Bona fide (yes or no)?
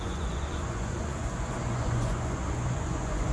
no